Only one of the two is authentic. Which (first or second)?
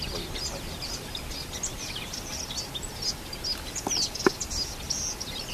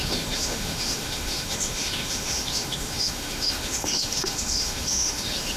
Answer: first